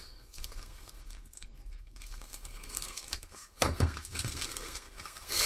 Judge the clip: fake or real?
fake